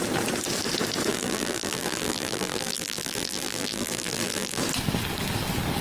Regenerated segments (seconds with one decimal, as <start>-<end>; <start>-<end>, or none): 1.1-4.6